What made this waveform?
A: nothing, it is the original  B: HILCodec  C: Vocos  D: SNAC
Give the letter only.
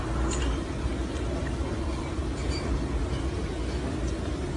A